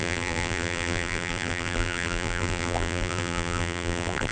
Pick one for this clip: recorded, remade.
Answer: remade